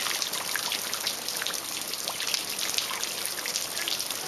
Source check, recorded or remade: recorded